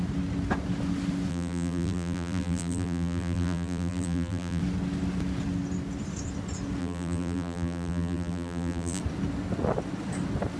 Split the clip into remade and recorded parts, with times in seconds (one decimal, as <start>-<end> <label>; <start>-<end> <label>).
0.0-1.3 recorded; 1.3-4.6 remade; 4.6-6.8 recorded; 6.8-9.0 remade; 9.0-10.6 recorded